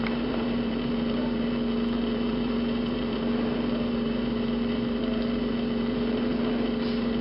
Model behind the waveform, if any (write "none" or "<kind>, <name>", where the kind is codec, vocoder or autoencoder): vocoder, BigVGAN v2